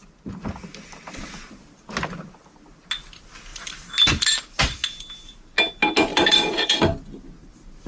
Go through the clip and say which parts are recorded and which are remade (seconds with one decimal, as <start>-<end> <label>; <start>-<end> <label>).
0.0-3.5 recorded; 3.5-4.4 remade; 4.4-6.1 recorded; 6.1-6.8 remade; 6.8-7.9 recorded